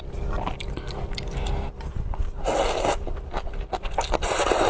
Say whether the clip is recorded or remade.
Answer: recorded